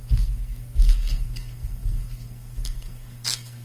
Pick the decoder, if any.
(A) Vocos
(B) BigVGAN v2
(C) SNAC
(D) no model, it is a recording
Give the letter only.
C